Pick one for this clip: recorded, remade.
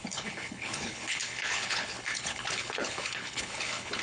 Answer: remade